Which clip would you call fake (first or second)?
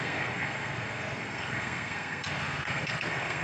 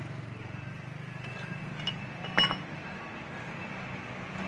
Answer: first